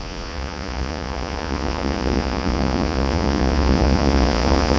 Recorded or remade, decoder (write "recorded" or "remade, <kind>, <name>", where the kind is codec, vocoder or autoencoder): remade, vocoder, Vocos